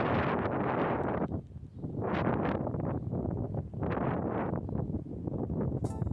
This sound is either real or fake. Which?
real